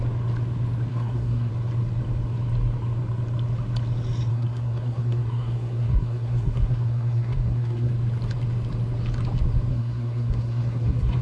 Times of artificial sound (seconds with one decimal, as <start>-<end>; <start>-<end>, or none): 0.9-1.5; 4.3-7.9; 9.7-11.2